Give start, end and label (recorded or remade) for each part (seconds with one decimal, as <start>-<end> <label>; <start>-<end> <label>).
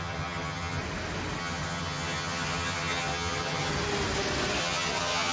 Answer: 0.0-0.8 remade; 0.8-1.4 recorded; 1.4-3.7 remade; 3.7-4.6 recorded; 4.6-5.3 remade